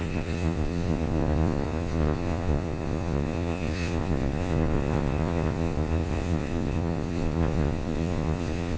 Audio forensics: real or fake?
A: fake